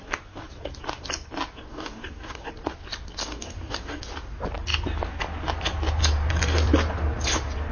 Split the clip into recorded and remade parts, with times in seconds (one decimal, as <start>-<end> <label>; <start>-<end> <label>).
0.0-1.7 recorded; 1.7-2.5 remade; 2.5-3.2 recorded; 3.2-4.0 remade; 4.0-7.7 recorded